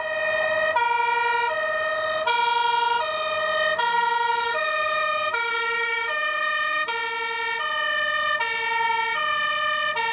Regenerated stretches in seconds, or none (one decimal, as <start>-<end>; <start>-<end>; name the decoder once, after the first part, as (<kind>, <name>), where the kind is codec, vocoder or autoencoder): 3.9-6.9 (codec, DAC)